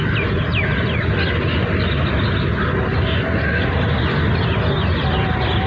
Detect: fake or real real